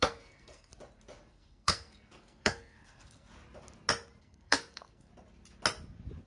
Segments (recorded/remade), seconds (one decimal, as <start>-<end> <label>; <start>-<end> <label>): 0.0-0.7 remade; 0.7-1.3 recorded; 1.3-3.3 remade; 3.3-4.2 recorded; 4.2-5.1 remade; 5.1-6.3 recorded